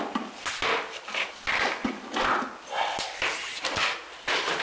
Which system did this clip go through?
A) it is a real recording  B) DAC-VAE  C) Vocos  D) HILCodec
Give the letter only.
A